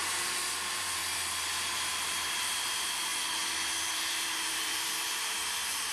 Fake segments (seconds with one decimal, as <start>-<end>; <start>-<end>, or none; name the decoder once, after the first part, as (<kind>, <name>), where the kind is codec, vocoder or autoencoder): 0.0-1.0 (vocoder, BigVGAN v2); 1.6-3.1; 3.8-5.9